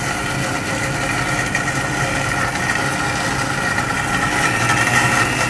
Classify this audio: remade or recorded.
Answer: recorded